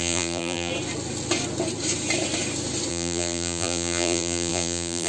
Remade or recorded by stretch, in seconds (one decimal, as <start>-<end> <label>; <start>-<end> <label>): 0.0-0.7 remade; 0.7-2.9 recorded; 2.9-5.1 remade

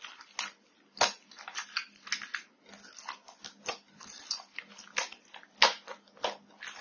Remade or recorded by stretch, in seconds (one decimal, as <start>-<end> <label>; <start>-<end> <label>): 0.0-6.8 recorded

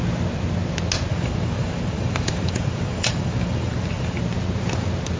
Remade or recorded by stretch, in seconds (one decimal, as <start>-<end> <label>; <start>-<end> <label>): 0.0-1.1 recorded; 1.1-4.2 remade; 4.2-5.2 recorded

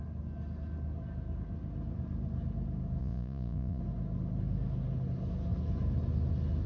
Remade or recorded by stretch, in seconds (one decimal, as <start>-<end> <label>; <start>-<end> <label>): 0.0-3.0 recorded; 3.0-3.8 remade; 3.8-6.7 recorded